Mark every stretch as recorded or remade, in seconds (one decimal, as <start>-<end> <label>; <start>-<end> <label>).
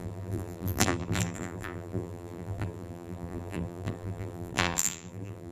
0.0-5.5 remade